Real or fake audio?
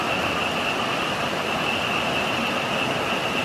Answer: real